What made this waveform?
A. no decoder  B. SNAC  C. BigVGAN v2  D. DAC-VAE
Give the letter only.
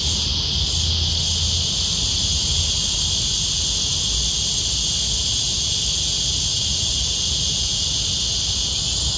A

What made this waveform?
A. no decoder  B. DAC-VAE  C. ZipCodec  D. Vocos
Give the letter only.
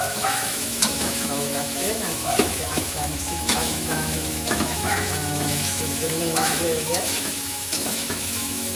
B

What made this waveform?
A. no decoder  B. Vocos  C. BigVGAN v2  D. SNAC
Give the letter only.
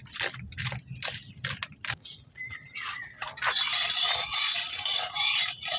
A